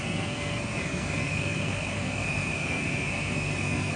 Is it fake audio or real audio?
fake